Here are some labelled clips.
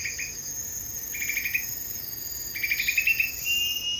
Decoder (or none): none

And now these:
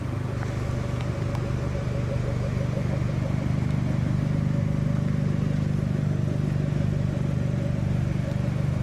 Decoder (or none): none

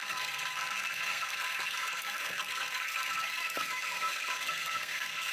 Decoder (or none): codec, SNAC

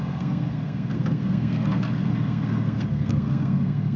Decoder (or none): codec, SNAC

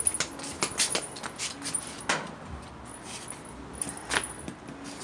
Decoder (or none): none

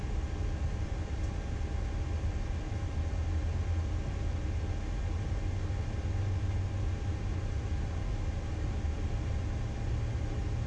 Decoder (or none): none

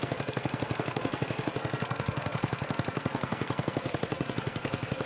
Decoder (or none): codec, SNAC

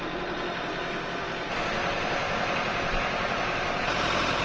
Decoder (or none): none